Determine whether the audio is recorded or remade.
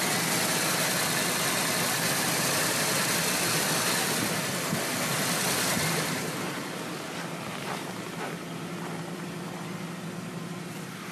recorded